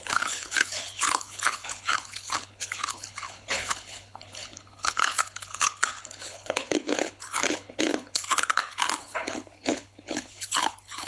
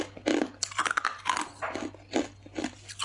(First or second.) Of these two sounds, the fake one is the first